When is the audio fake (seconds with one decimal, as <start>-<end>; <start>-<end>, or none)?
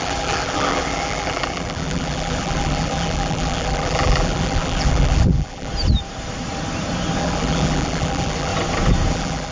0.0-5.7; 7.2-8.5; 9.1-9.5